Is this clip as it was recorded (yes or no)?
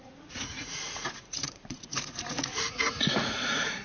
no